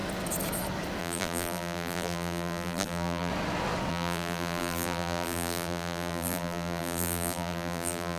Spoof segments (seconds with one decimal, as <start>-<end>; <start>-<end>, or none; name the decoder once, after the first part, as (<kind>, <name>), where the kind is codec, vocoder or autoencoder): 1.0-3.3 (vocoder, BigVGAN v2); 3.9-8.2